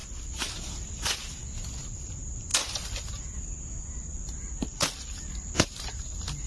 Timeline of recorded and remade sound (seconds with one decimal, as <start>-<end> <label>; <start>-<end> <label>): 0.0-6.5 recorded